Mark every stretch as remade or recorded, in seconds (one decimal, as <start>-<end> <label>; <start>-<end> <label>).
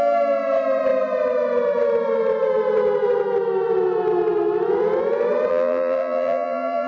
0.0-5.5 recorded; 5.5-6.9 remade